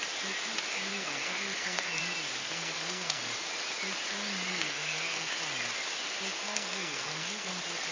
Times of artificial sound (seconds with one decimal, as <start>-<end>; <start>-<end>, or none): 0.9-2.0; 2.4-3.2; 4.5-5.3; 6.3-7.5